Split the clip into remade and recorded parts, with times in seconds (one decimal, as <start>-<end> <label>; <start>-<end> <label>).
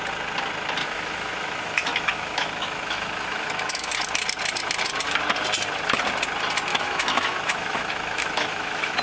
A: 0.0-0.8 recorded; 0.8-3.9 remade; 3.9-6.7 recorded; 6.7-9.0 remade